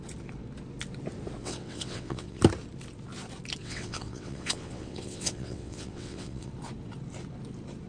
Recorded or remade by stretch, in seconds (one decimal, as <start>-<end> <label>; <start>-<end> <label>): 0.0-1.4 recorded; 1.4-2.4 remade; 2.4-3.6 recorded; 3.6-6.5 remade; 6.5-7.9 recorded